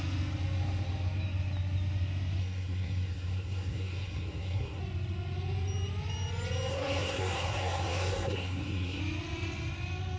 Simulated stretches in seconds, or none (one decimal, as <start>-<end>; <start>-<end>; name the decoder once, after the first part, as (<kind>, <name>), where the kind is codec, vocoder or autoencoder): 2.4-4.8 (codec, SNAC); 6.7-9.0